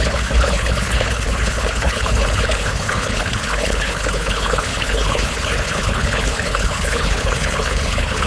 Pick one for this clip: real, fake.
fake